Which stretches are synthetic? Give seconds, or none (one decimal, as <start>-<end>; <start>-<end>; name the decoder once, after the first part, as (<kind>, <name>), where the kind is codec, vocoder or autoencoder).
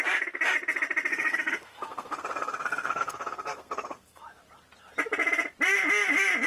1.1-4.2 (codec, SNAC)